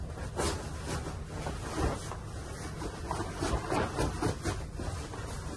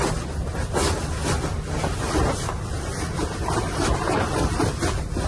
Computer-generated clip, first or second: second